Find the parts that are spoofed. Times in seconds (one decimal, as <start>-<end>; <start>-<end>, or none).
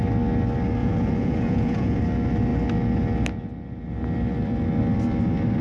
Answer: 0.8-2.0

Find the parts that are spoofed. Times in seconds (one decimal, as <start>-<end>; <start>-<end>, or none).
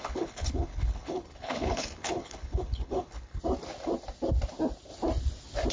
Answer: 0.0-3.4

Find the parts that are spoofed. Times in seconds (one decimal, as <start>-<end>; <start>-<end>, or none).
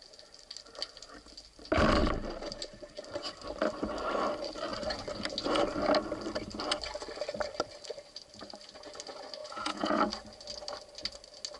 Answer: 9.4-10.0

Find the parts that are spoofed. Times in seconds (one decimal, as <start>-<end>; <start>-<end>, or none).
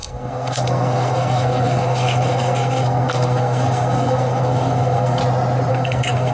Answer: 0.0-5.2; 5.7-6.3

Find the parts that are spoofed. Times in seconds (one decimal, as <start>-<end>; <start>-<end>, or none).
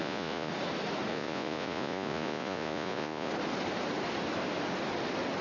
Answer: 0.0-0.5; 1.1-3.3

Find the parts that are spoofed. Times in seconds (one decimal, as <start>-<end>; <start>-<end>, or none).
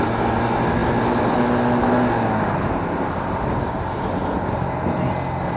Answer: none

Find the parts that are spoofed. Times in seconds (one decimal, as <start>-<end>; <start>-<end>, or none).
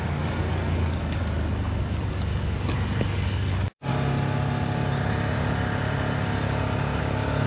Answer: 0.0-1.2; 1.8-3.9; 7.0-7.5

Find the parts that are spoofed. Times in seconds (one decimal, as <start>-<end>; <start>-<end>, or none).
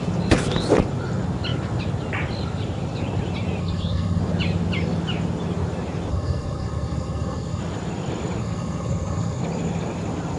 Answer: 3.6-4.2; 6.1-7.6; 8.4-9.4